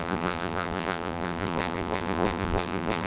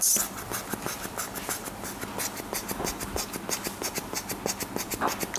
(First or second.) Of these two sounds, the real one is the second